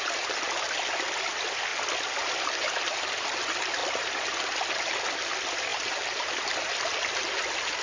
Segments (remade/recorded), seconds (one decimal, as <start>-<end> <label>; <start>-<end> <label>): 0.0-7.8 recorded